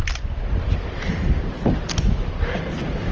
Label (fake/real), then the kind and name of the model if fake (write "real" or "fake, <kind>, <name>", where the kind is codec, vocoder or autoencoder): real